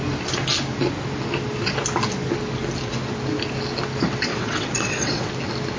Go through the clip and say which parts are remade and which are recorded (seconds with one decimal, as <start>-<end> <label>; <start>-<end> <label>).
0.0-4.3 recorded; 4.3-5.3 remade; 5.3-5.8 recorded